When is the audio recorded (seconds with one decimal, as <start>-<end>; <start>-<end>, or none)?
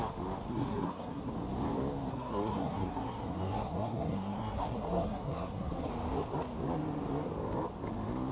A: 0.0-0.5; 1.3-2.1; 5.9-8.3